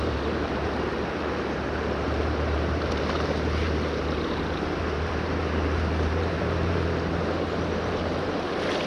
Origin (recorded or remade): remade